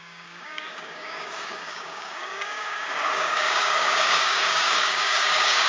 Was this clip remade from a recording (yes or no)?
yes